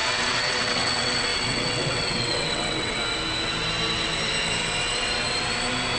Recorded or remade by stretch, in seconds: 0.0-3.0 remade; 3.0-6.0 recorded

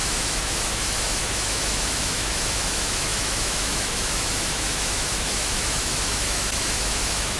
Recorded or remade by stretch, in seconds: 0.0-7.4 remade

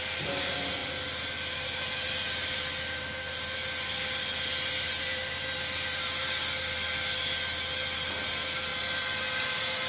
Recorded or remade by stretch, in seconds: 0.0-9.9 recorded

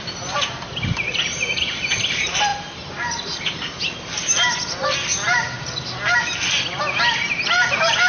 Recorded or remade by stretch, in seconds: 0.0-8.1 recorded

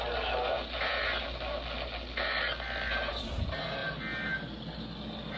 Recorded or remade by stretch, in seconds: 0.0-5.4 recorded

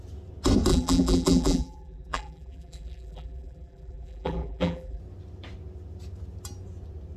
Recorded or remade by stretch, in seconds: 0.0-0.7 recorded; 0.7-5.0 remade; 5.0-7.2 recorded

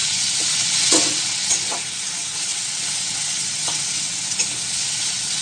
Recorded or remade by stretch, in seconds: 0.0-5.4 remade

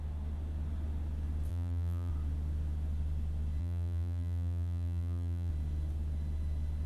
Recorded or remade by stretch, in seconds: 0.0-1.5 recorded; 1.5-2.1 remade; 2.1-3.6 recorded; 3.6-5.5 remade; 5.5-6.9 recorded